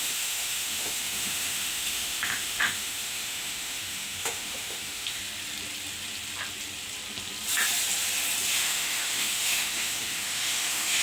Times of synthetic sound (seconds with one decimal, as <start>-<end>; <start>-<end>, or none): 0.0-5.2; 8.5-11.0